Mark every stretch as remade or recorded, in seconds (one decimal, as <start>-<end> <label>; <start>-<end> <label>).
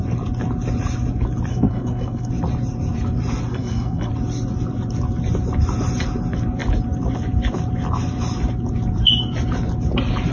0.0-1.5 recorded; 1.5-2.3 remade; 2.3-3.5 recorded; 3.5-4.1 remade; 4.1-10.3 recorded